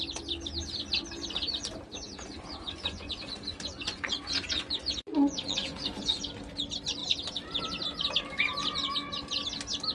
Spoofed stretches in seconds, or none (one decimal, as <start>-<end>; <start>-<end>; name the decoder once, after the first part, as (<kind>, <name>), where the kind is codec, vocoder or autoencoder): 1.9-6.2 (vocoder, Vocos)